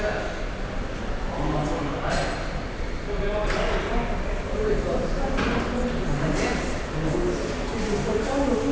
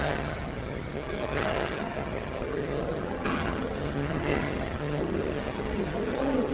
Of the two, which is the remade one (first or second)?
second